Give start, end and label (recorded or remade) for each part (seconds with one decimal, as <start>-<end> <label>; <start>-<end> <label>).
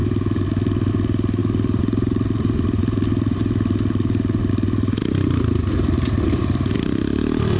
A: 0.0-1.4 recorded; 1.4-4.5 remade; 4.5-7.6 recorded